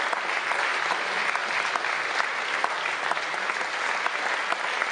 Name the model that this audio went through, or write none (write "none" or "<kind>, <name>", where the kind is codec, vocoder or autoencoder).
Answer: none